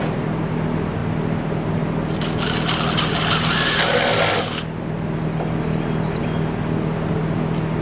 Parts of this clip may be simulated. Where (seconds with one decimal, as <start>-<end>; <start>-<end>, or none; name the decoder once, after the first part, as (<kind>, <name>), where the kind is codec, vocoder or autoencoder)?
none

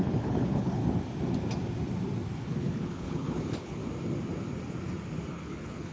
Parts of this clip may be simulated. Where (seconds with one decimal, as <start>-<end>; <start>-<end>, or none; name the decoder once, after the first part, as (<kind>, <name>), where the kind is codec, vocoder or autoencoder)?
0.0-0.8 (codec, HILCodec); 2.6-3.8; 5.3-5.9

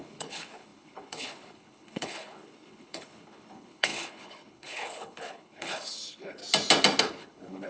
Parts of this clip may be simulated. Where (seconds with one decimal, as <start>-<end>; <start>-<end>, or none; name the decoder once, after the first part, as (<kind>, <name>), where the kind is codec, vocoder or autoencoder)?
0.0-6.4 (codec, HILCodec); 7.0-7.7

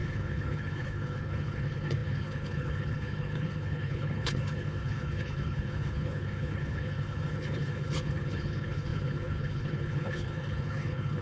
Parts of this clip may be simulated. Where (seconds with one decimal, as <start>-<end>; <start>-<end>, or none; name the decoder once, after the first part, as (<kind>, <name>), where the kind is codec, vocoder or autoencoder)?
0.0-11.2 (codec, HILCodec)